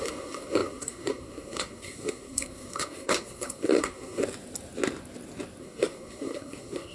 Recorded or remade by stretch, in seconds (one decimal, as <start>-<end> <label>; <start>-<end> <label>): 0.0-4.2 remade; 4.2-5.6 recorded; 5.6-6.9 remade

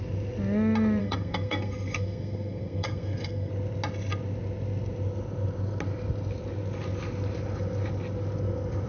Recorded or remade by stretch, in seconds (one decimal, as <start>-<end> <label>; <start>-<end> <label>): 0.0-1.0 recorded; 1.0-3.5 remade; 3.5-8.9 recorded